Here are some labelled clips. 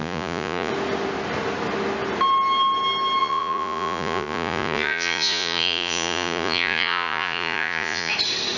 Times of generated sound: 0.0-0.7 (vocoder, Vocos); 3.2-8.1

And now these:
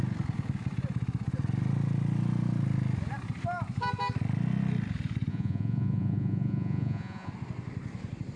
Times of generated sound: 5.3-7.3 (vocoder, Vocos)

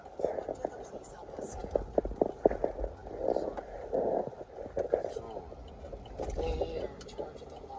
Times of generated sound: none

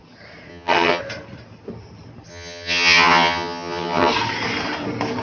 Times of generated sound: 0.5-1.0 (vocoder, HiFi-GAN); 2.3-4.1